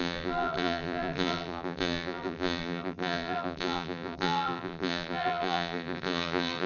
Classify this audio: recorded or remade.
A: remade